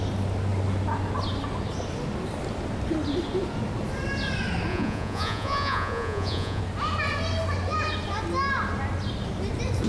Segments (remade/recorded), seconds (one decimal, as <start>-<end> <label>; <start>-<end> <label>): 0.0-4.7 recorded; 4.7-6.6 remade; 6.6-9.9 recorded